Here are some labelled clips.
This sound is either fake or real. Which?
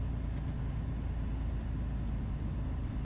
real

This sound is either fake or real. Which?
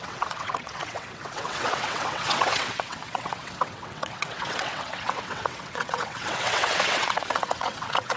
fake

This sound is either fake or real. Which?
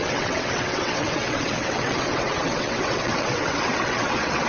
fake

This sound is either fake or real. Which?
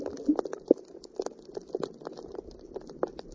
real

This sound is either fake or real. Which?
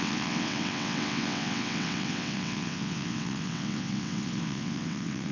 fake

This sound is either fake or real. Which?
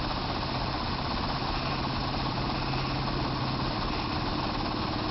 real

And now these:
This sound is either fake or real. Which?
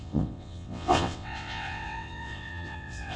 fake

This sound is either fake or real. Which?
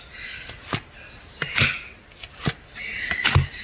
real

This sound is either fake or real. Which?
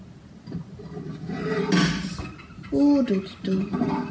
real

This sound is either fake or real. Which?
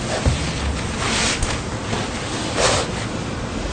real